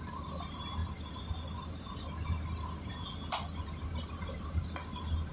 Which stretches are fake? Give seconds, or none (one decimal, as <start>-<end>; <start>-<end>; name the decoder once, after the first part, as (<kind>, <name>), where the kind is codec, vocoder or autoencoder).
none